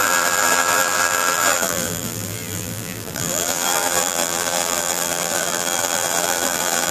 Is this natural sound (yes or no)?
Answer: no